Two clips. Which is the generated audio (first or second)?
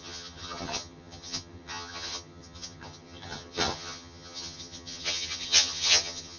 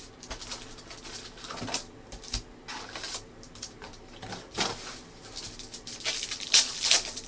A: first